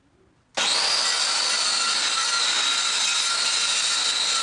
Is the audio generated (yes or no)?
no